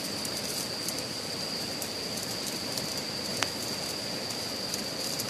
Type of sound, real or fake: real